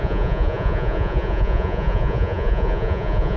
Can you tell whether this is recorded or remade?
remade